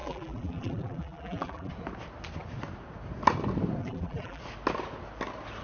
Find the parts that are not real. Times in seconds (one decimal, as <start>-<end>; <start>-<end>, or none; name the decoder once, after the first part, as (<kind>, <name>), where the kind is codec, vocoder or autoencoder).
0.0-1.7 (vocoder, BigVGAN v2); 3.8-4.4